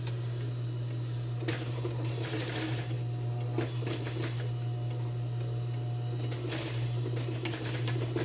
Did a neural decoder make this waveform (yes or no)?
no